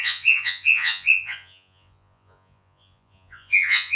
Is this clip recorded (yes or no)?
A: no